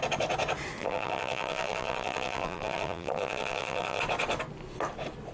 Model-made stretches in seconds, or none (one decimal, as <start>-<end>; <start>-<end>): 0.8-4.0